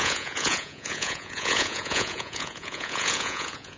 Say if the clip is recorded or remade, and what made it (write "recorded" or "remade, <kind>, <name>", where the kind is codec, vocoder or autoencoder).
remade, vocoder, Vocos